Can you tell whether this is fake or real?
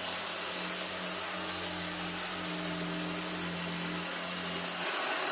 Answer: real